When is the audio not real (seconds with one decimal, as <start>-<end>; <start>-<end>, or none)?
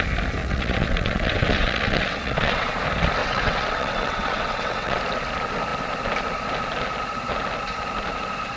0.4-2.7; 3.2-5.0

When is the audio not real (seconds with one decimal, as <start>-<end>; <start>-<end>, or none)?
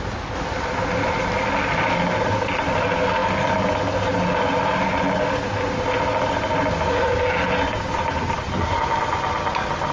none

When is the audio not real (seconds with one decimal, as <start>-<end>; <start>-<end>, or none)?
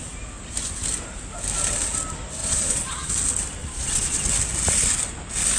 2.4-3.1; 3.6-4.2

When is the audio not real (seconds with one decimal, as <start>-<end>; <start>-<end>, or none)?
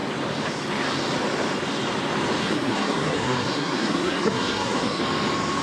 2.4-5.0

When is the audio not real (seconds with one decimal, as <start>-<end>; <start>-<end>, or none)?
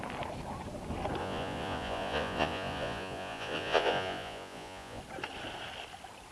1.2-5.0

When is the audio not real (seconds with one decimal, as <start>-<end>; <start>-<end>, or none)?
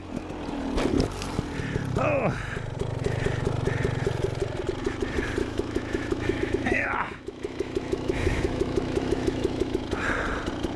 5.4-9.8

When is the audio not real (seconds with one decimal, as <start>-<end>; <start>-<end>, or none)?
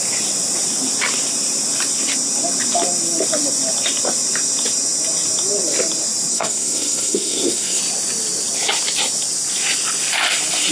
6.3-7.8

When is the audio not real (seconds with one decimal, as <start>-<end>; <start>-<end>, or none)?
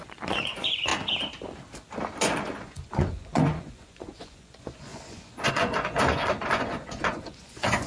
0.0-0.9; 2.2-7.9